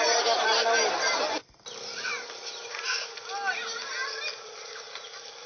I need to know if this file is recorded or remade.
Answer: recorded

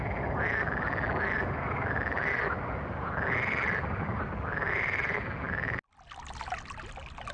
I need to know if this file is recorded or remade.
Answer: recorded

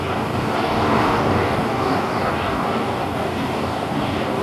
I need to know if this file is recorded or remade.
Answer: remade